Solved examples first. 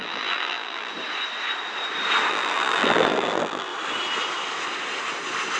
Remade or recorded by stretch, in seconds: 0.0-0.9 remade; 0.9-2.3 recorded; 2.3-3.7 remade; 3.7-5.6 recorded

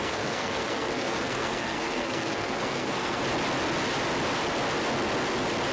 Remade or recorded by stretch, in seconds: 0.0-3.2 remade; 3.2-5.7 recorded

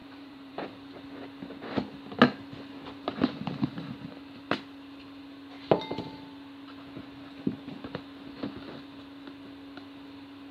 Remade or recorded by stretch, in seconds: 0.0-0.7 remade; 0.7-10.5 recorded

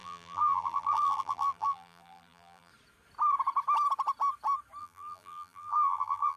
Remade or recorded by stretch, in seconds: 0.0-2.7 remade; 2.7-4.8 recorded; 4.8-6.4 remade